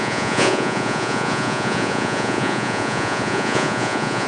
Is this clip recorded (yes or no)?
no